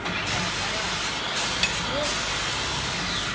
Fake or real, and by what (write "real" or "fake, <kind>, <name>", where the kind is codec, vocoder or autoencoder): real